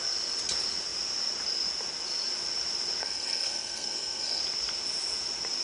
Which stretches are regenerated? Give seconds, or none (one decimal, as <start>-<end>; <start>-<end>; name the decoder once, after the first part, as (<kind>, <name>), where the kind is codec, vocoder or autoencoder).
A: 3.0-4.4 (codec, SNAC)